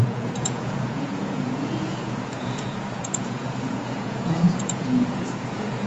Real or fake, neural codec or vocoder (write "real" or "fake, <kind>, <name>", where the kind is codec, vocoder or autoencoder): fake, vocoder, Vocos